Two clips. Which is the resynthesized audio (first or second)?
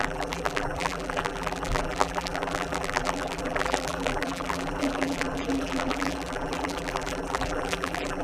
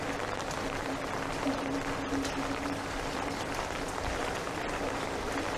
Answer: first